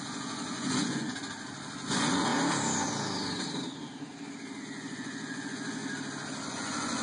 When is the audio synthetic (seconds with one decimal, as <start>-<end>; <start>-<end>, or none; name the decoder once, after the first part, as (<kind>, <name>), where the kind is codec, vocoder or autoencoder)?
0.0-1.2 (vocoder, Vocos); 1.9-2.3; 4.6-5.8; 6.5-7.0